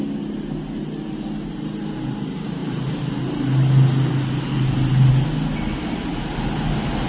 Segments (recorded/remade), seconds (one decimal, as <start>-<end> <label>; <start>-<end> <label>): 0.0-7.1 recorded